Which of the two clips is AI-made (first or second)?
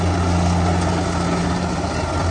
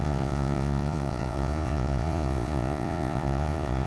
second